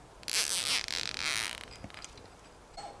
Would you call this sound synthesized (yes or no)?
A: no